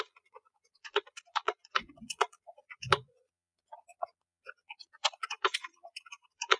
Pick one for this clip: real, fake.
fake